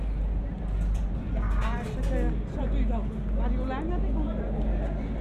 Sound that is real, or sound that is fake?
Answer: real